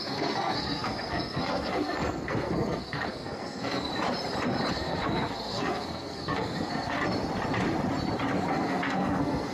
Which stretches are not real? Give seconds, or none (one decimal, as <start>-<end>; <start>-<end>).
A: 0.0-3.9; 4.7-7.0; 8.5-9.5